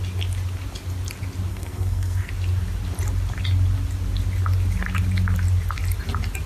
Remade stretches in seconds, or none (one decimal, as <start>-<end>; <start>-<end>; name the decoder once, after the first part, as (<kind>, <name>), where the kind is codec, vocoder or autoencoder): 1.5-2.3 (codec, SNAC)